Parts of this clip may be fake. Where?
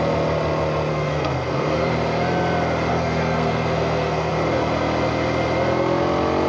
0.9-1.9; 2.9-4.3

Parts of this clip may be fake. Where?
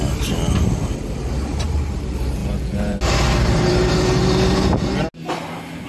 2.4-3.0